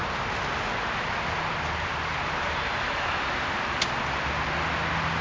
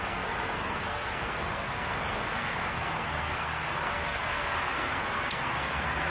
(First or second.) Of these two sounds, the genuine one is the first